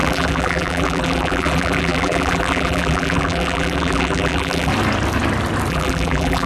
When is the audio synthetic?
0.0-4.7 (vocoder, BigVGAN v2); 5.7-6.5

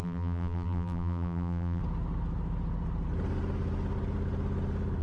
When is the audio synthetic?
0.0-1.8 (vocoder, BigVGAN v2)

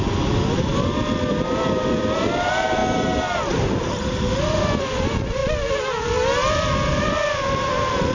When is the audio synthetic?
0.0-0.7 (vocoder, BigVGAN v2); 1.3-2.8; 4.8-5.4; 7.0-8.1

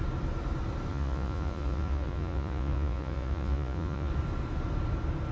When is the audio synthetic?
0.9-4.1 (vocoder, Vocos)

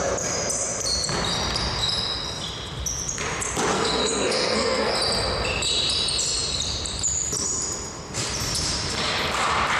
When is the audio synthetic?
3.7-4.9 (codec, SNAC)

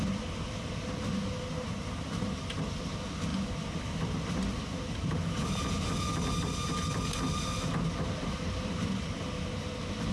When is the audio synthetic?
none